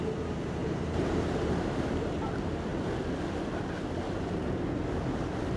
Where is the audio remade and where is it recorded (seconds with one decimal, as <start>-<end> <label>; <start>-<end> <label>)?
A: 0.0-0.6 recorded; 0.6-1.9 remade; 1.9-5.6 recorded